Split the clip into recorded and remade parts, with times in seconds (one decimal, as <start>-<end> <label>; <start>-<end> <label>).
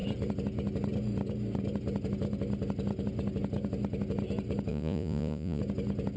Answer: 0.0-4.7 recorded; 4.7-5.6 remade; 5.6-6.2 recorded